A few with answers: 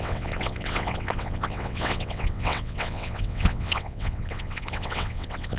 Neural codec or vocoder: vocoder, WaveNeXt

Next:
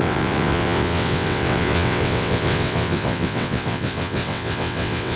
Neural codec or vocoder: vocoder, WaveNeXt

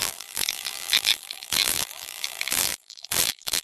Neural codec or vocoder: vocoder, BigVGAN v2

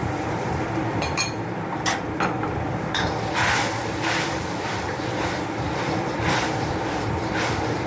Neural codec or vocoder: vocoder, BigVGAN v2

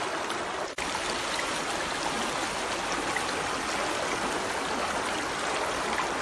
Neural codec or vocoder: none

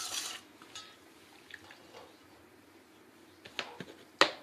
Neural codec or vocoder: none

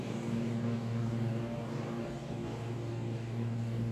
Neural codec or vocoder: codec, DAC